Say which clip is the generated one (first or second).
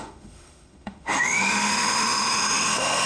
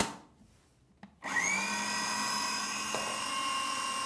first